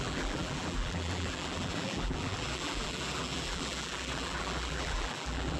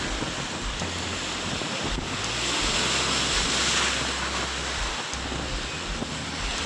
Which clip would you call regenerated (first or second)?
first